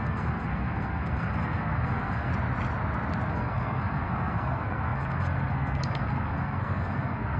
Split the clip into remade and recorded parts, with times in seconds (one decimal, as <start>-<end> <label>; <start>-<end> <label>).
0.0-2.3 remade; 2.3-3.3 recorded; 3.3-7.4 remade